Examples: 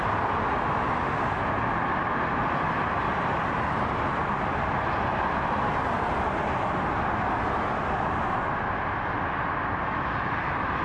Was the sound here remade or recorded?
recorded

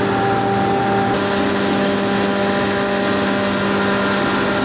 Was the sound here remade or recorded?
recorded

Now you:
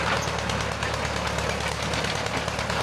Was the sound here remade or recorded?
recorded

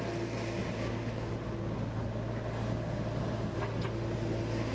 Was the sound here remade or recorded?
recorded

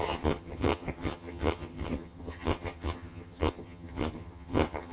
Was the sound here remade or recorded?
remade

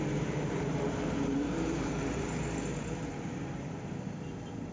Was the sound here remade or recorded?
remade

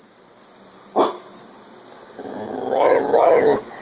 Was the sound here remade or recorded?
recorded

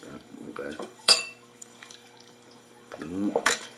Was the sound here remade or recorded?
remade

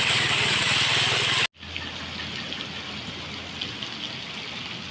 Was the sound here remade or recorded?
recorded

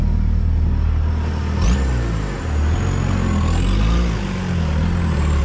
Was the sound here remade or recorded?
recorded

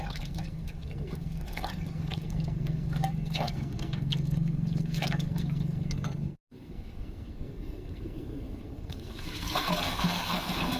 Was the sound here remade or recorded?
remade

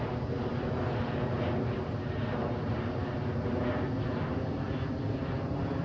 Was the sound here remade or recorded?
recorded